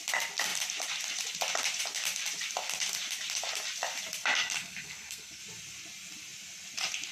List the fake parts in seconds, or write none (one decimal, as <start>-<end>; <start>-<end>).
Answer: 4.4-5.4